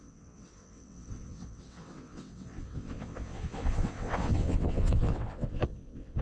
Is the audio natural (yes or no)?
no